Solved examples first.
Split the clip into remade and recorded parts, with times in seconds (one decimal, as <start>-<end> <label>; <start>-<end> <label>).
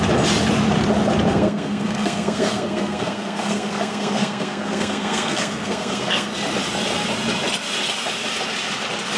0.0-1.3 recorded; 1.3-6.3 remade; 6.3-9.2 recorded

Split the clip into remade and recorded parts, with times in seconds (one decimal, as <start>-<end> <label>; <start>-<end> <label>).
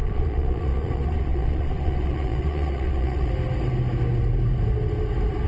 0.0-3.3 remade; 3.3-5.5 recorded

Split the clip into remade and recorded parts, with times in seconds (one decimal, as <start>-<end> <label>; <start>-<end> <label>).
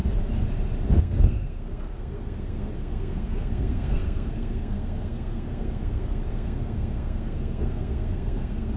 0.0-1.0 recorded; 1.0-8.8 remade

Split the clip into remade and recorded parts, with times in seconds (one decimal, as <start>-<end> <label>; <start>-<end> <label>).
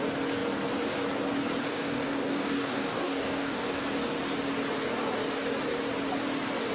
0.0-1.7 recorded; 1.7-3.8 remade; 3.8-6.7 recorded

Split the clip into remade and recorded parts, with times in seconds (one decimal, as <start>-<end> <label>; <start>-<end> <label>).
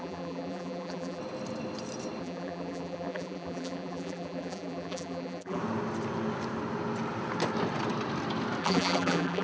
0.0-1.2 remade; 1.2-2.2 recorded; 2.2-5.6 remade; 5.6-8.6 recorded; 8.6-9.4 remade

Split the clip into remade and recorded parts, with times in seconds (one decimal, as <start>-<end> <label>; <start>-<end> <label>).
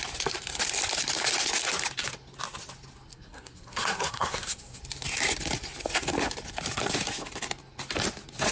0.0-3.1 recorded; 3.1-4.8 remade; 4.8-8.5 recorded